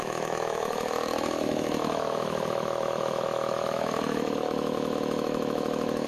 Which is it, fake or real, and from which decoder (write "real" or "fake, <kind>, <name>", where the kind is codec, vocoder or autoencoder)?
fake, autoencoder, DAC-VAE